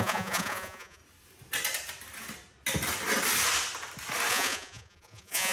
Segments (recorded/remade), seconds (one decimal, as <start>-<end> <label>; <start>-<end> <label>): 0.0-1.0 remade; 1.0-4.3 recorded; 4.3-5.5 remade